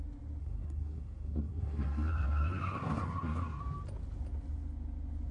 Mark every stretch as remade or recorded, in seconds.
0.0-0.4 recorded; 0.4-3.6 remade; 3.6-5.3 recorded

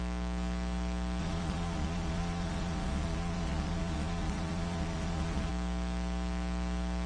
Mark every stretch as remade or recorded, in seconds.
0.0-1.2 recorded; 1.2-5.5 remade; 5.5-7.1 recorded

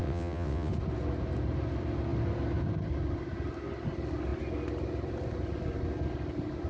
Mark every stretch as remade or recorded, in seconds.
0.0-0.7 remade; 0.7-6.7 recorded

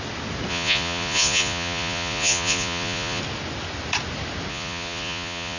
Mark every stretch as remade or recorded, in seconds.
0.0-0.5 recorded; 0.5-3.2 remade; 3.2-4.5 recorded; 4.5-5.6 remade

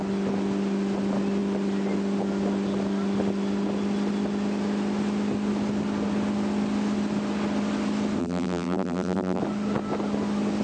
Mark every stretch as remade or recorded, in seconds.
0.0-8.2 recorded; 8.2-9.4 remade; 9.4-10.6 recorded

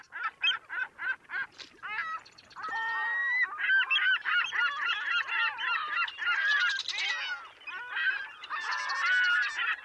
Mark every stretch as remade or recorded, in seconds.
0.0-9.8 recorded